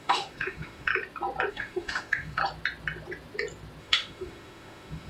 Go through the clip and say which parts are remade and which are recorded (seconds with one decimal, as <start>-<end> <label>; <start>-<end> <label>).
0.0-0.9 remade; 0.9-1.5 recorded; 1.5-2.4 remade; 2.4-3.8 recorded; 3.8-5.1 remade

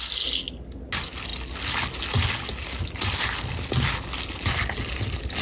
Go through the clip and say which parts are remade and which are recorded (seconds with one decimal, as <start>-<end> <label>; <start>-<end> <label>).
0.0-5.4 recorded

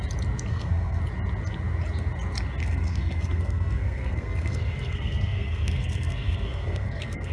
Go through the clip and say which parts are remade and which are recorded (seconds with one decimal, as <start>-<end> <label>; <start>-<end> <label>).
0.0-0.5 recorded; 0.5-1.0 remade; 1.0-2.6 recorded; 2.6-7.3 remade

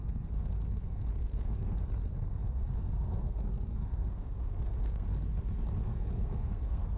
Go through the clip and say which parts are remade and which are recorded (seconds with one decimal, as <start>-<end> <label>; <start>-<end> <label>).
0.0-5.1 remade; 5.1-5.8 recorded; 5.8-7.0 remade

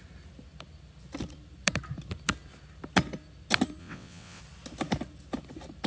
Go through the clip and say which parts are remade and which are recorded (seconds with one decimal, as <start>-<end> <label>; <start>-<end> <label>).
0.0-3.8 recorded; 3.8-4.4 remade; 4.4-5.9 recorded